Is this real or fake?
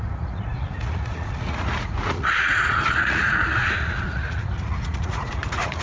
fake